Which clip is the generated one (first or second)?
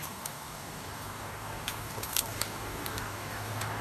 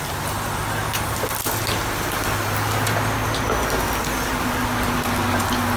first